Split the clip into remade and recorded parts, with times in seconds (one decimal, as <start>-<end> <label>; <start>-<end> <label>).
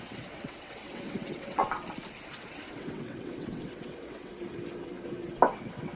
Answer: 0.0-1.6 remade; 1.6-2.3 recorded; 2.3-4.3 remade; 4.3-5.5 recorded; 5.5-6.0 remade